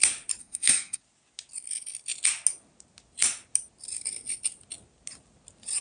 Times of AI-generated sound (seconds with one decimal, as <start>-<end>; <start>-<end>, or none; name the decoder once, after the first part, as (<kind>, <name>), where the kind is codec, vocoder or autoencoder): 0.4-1.0 (codec, SNAC)